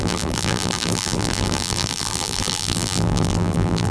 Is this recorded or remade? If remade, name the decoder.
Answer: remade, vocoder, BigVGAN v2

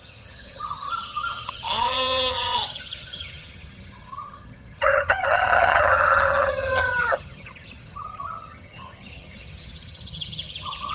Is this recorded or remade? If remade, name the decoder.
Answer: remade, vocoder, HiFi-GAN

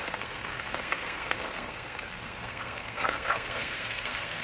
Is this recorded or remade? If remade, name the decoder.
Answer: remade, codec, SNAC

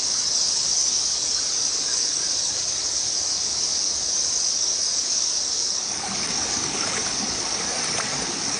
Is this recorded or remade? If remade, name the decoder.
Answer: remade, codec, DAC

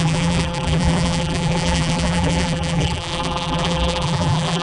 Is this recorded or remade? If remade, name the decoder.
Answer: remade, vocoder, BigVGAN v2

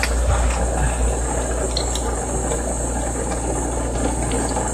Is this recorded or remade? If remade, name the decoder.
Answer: recorded